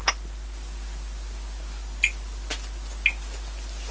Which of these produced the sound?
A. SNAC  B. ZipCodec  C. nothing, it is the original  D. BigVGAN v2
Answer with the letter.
C